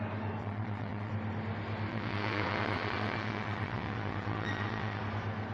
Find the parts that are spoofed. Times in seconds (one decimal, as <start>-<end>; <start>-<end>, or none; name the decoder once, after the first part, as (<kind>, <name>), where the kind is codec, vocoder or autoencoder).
0.4-1.1 (vocoder, WaveNeXt); 1.9-5.0